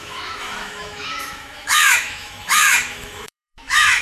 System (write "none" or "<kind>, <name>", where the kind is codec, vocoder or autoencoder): autoencoder, DAC-VAE